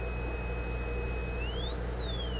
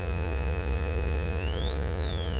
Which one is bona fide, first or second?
first